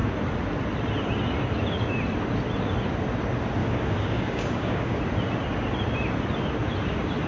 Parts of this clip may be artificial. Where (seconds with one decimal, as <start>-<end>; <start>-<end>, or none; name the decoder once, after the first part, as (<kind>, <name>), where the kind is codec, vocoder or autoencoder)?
3.6-5.0 (codec, DAC)